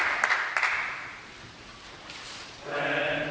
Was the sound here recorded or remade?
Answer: remade